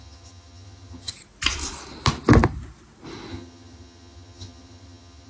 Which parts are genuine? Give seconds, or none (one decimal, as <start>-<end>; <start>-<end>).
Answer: 1.1-3.3